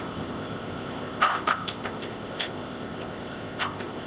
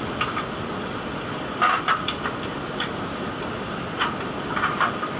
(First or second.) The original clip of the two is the second